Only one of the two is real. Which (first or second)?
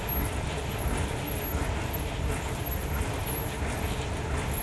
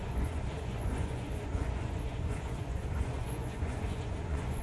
first